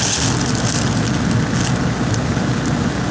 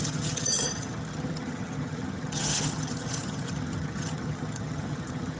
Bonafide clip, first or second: first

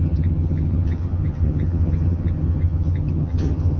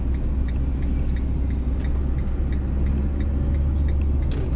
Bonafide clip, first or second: second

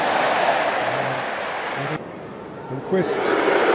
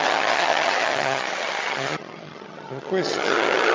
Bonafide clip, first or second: first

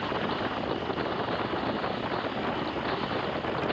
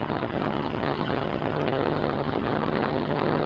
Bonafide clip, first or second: first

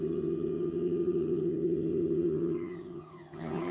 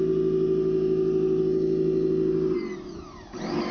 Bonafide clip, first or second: second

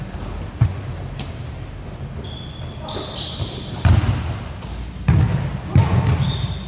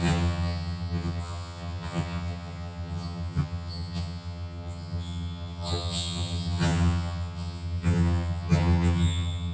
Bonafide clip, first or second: first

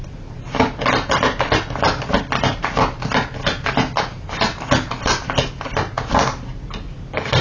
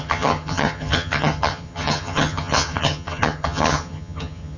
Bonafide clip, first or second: first